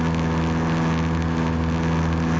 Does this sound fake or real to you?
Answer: real